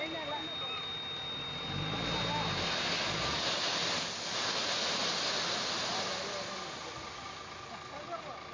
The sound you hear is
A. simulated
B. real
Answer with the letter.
B